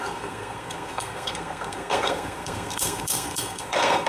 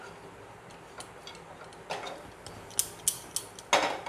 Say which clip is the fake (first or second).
first